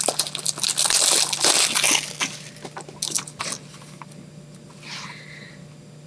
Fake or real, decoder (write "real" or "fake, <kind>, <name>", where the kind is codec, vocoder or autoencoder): real